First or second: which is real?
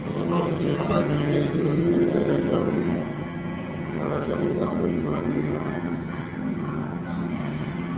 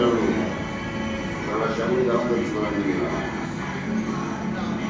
second